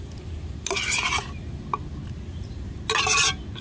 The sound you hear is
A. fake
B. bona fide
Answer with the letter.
B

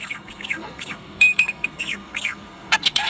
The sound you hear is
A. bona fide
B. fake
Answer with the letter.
B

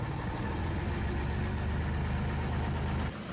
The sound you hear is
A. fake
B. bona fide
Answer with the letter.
B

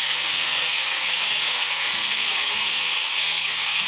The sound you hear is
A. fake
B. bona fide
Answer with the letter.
A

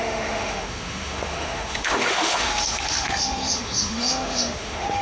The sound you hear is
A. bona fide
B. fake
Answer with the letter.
B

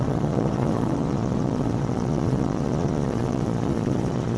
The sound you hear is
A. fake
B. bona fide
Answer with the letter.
A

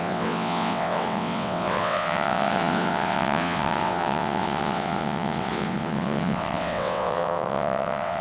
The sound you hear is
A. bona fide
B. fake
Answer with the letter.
B